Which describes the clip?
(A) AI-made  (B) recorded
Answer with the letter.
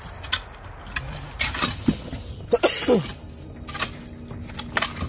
B